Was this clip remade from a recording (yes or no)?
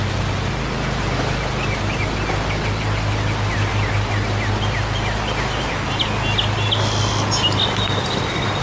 no